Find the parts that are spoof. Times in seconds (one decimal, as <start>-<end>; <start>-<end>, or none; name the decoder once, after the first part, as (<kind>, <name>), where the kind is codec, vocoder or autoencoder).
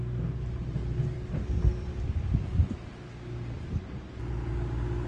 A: 0.8-3.8 (vocoder, BigVGAN v2)